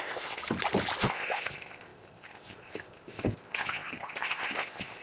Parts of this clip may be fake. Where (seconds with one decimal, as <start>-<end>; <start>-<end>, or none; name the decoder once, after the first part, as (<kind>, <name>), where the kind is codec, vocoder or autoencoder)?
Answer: 0.0-0.4 (codec, ZipCodec); 1.0-5.0